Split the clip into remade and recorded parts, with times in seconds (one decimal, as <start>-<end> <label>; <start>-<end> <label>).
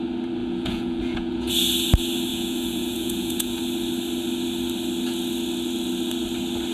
0.0-0.4 recorded; 0.4-1.5 remade; 1.5-2.3 recorded; 2.3-3.6 remade; 3.6-6.7 recorded